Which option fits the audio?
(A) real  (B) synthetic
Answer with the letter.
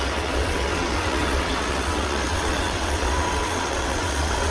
B